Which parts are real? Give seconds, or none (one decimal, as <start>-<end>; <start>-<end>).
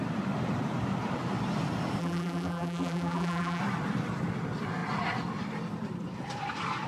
0.0-2.0; 3.6-6.9